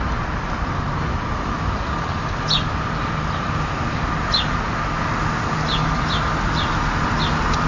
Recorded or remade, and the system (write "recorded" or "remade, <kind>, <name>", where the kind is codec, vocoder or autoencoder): recorded